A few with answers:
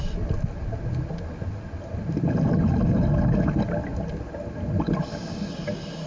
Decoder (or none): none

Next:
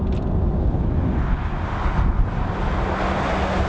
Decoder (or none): none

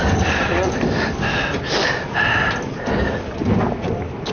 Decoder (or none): none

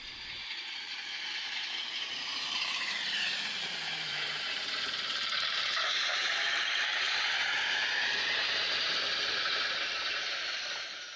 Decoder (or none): vocoder, BigVGAN v2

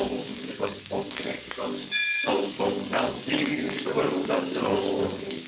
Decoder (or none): codec, DAC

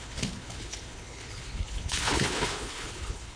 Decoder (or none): codec, HILCodec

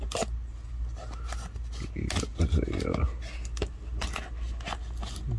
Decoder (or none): none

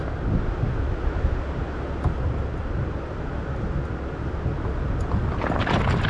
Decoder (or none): none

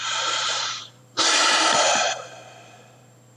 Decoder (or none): vocoder, BigVGAN v2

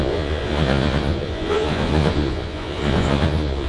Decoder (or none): vocoder, Vocos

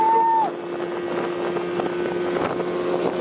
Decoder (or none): none